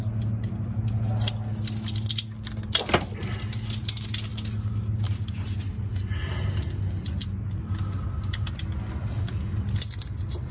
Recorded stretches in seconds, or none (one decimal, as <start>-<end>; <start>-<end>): 0.0-10.5